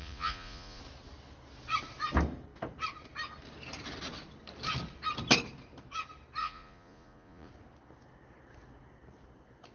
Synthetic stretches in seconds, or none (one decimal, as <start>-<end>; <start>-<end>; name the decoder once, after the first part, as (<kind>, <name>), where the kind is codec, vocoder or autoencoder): 0.0-0.8 (vocoder, Vocos); 6.4-7.5